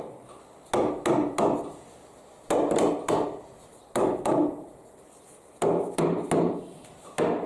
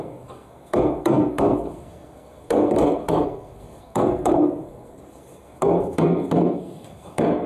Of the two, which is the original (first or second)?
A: first